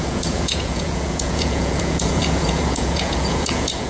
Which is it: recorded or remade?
remade